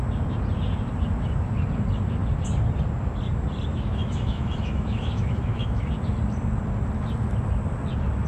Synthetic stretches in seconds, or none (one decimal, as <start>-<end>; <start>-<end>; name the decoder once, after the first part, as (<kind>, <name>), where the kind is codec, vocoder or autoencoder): 3.7-5.9 (autoencoder, DAC-VAE)